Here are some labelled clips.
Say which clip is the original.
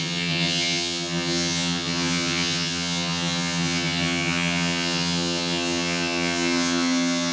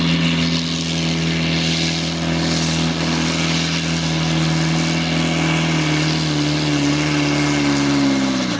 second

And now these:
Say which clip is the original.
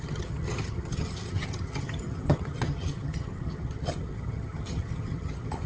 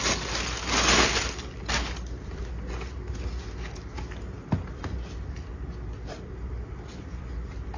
second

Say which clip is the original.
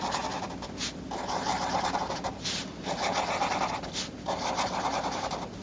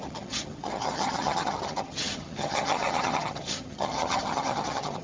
first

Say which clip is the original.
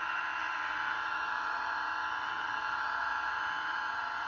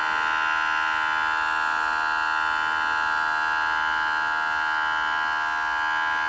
second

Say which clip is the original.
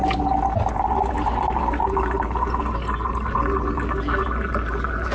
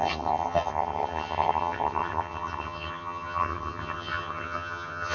first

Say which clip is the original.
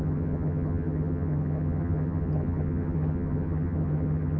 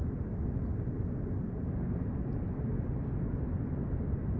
second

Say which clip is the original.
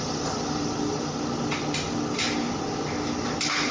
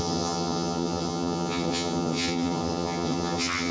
first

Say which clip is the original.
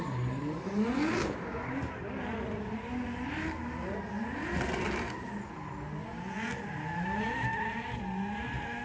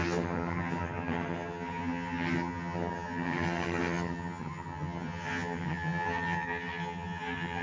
first